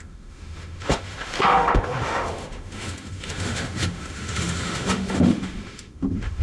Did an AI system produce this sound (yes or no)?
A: yes